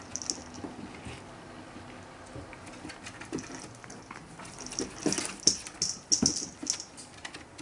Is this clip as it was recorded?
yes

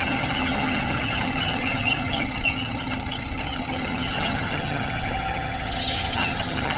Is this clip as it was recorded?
no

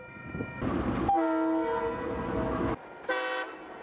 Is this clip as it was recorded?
yes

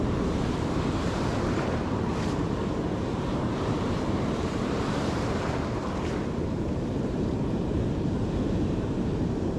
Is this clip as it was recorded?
no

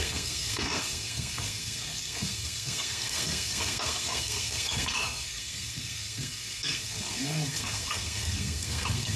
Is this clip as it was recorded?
no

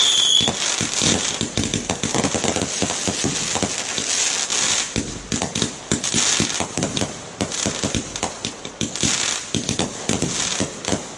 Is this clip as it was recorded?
yes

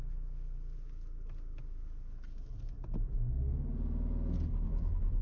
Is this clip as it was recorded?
yes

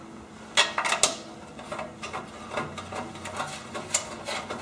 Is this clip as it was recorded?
yes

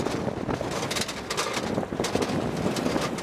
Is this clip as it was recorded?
yes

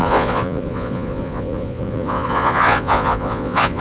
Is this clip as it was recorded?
no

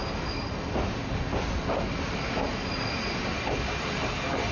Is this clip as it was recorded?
yes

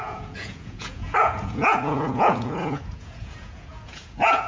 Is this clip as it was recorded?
no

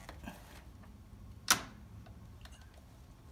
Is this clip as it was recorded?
yes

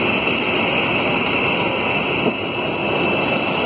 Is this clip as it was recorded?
yes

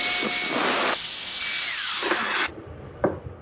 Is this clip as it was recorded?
yes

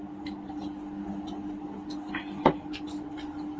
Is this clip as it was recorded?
yes